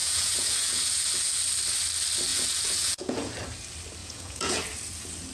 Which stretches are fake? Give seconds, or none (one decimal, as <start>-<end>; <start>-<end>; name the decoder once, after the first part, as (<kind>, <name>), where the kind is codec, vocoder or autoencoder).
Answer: 0.0-1.1 (vocoder, Vocos); 2.3-3.3; 4.0-4.6